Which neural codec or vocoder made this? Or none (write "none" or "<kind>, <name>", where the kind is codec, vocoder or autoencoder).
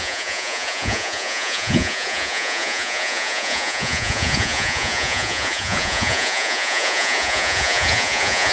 vocoder, Vocos